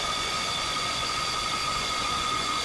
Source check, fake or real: fake